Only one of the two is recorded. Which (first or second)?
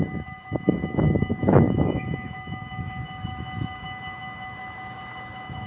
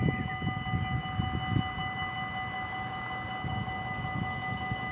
second